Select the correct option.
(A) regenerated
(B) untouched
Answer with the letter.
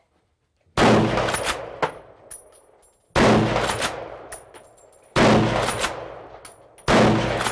B